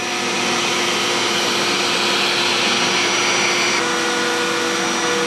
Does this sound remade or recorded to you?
recorded